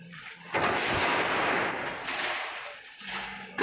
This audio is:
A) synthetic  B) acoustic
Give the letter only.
B